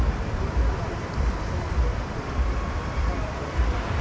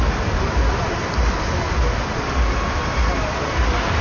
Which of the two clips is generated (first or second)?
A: first